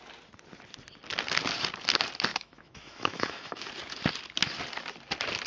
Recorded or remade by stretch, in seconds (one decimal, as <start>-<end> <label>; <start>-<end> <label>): 0.0-2.3 recorded; 2.3-3.7 remade; 3.7-5.5 recorded